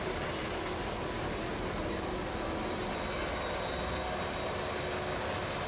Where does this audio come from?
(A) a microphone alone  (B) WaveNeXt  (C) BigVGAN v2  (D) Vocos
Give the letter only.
A